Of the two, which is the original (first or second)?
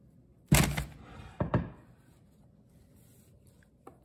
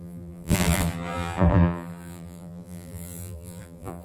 first